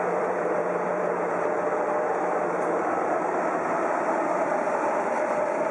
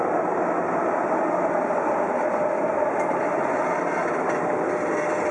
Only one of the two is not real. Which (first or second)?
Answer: first